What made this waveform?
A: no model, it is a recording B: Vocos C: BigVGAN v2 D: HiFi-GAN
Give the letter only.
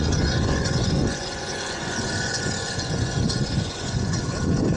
B